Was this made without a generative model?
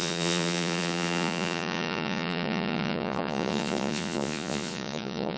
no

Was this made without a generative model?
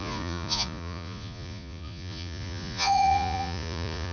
no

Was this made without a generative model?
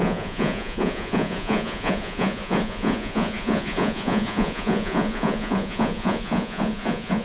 no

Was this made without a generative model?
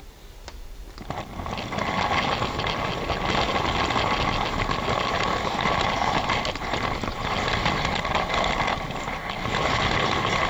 yes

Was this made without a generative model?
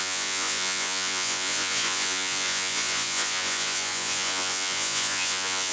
no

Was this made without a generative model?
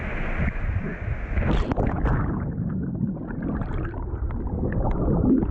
yes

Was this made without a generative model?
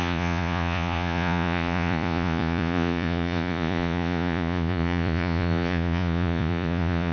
no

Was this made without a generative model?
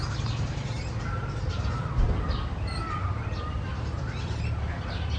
yes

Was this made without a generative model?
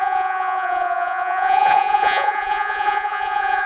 no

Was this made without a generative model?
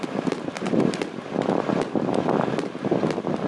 yes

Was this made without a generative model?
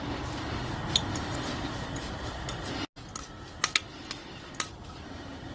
yes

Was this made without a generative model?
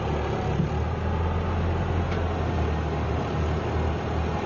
yes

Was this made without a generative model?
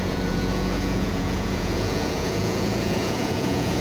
no